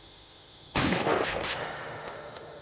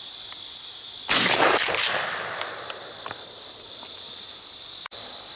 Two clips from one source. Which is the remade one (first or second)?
first